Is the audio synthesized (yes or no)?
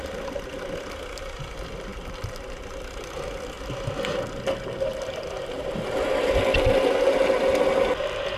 no